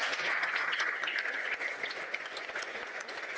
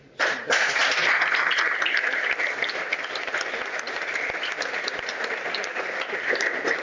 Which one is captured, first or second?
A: second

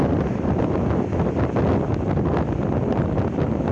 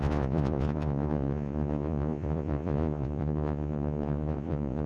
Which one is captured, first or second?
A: first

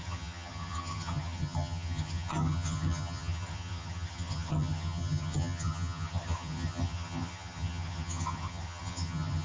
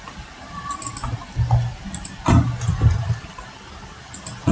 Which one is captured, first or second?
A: second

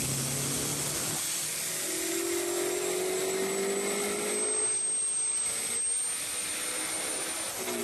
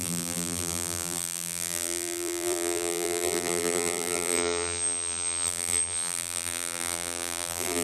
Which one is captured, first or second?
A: first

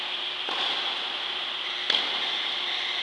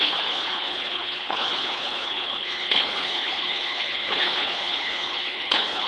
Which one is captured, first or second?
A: first